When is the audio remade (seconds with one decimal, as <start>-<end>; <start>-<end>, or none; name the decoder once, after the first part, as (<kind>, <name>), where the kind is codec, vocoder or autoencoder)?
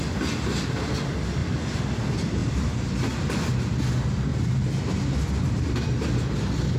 1.4-1.9 (vocoder, BigVGAN v2)